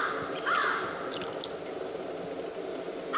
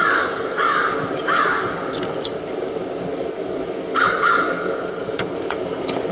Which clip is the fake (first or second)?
second